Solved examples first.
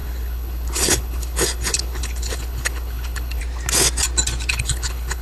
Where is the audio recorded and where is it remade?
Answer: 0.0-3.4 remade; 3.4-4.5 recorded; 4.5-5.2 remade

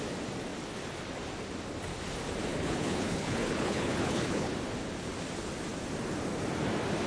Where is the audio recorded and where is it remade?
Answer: 0.0-2.5 recorded; 2.5-4.5 remade; 4.5-7.1 recorded

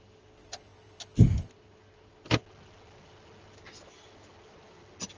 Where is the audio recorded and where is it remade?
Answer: 0.0-5.2 recorded

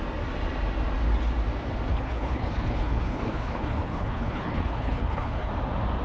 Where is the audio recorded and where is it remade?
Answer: 0.0-1.9 recorded; 1.9-5.5 remade; 5.5-6.0 recorded

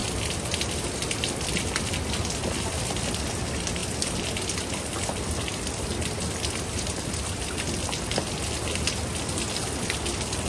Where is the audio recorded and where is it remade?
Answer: 0.0-10.5 recorded

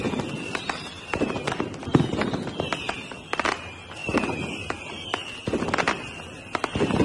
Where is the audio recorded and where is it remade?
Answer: 0.0-7.0 recorded